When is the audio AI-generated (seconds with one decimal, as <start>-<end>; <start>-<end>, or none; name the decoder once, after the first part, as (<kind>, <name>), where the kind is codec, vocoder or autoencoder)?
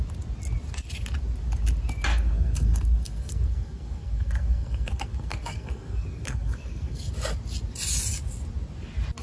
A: 2.1-7.1 (codec, SNAC)